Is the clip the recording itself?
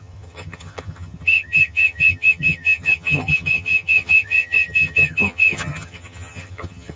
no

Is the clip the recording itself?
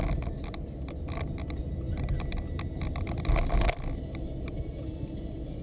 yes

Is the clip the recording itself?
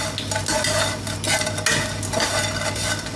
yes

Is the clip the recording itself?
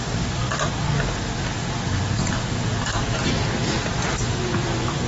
yes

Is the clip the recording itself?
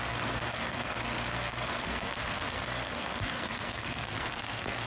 no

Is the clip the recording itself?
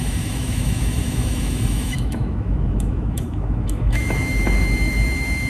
no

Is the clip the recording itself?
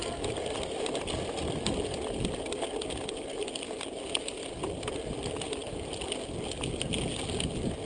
yes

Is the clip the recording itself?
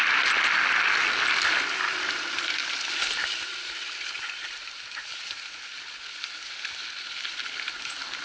yes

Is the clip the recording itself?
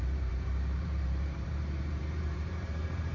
no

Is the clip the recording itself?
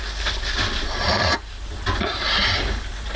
no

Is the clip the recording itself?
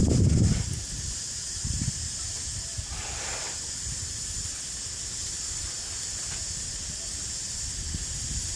yes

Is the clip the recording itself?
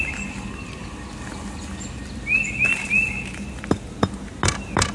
yes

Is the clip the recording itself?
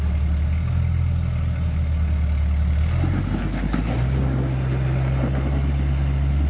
yes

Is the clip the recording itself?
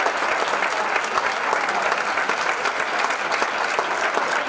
yes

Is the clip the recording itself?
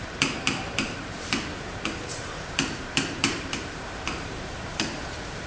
no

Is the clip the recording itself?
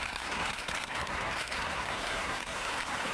no